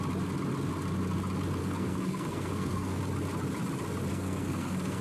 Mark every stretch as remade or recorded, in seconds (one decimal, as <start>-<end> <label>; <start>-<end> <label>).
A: 0.0-1.6 recorded; 1.6-3.0 remade; 3.0-4.1 recorded; 4.1-5.0 remade